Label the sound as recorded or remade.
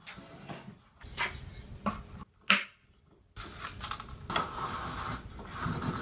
recorded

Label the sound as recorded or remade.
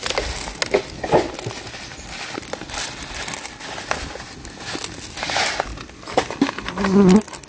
recorded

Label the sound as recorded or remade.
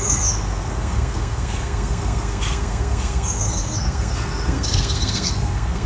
remade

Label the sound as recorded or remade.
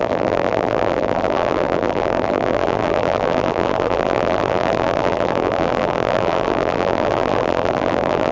remade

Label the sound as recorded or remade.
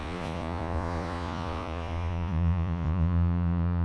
remade